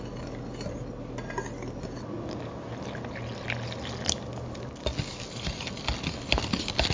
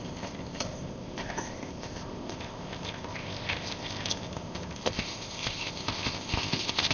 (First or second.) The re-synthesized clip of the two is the second